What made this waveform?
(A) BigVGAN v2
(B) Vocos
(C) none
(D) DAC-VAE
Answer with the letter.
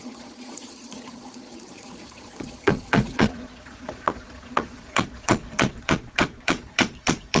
B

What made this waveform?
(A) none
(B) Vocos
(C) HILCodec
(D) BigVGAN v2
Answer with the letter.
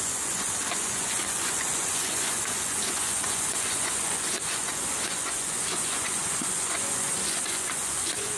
B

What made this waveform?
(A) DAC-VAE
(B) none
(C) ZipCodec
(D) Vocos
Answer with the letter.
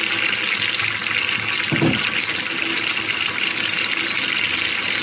B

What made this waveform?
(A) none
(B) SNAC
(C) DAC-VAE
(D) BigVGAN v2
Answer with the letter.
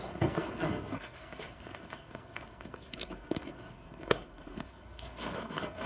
B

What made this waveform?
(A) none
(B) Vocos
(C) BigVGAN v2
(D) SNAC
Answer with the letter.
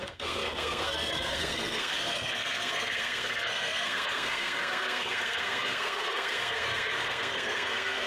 D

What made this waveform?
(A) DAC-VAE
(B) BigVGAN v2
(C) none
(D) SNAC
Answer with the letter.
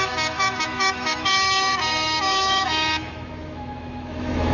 A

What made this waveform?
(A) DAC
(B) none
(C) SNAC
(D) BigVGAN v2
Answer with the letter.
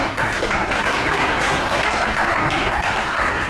C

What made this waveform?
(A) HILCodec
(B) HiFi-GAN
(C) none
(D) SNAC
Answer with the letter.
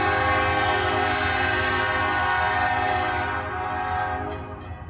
C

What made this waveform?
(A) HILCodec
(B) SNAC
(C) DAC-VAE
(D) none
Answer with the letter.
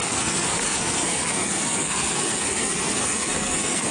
B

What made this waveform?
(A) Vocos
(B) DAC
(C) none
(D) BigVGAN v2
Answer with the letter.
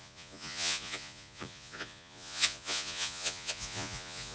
A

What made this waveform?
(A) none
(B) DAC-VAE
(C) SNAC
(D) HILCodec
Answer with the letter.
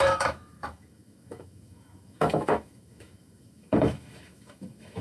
B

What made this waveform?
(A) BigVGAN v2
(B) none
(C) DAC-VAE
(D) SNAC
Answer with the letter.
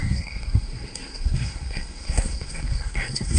D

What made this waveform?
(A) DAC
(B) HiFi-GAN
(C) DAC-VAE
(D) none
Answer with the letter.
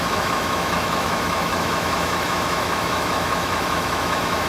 C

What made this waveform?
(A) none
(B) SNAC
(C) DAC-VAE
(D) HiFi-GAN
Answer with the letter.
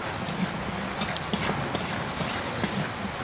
A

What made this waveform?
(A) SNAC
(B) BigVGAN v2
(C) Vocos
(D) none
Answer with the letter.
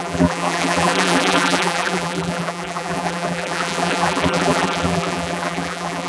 B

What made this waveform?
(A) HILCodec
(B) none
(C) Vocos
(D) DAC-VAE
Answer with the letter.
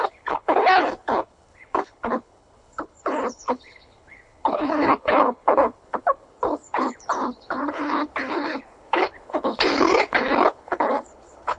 A